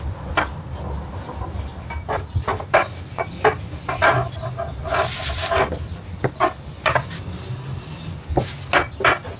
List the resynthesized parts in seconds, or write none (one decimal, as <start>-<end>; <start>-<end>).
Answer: none